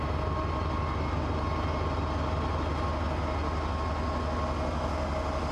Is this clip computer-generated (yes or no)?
no